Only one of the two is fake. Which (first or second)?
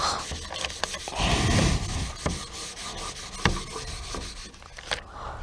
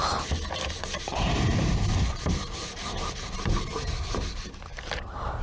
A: second